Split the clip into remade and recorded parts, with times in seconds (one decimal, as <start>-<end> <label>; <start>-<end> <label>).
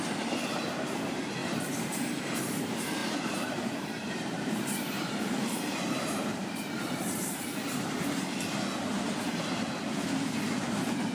0.0-1.4 recorded; 1.4-2.6 remade; 2.6-3.0 recorded; 3.0-8.2 remade; 8.2-11.1 recorded